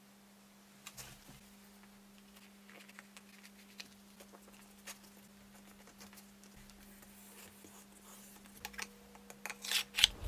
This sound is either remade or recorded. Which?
recorded